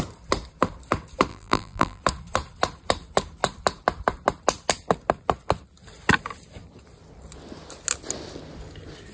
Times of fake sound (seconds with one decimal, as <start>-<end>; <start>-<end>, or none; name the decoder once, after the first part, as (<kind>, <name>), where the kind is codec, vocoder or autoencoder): 1.3-2.0 (vocoder, BigVGAN v2)